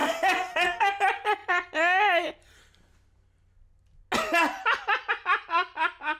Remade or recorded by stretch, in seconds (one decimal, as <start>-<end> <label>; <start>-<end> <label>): 0.0-0.9 remade; 0.9-6.2 recorded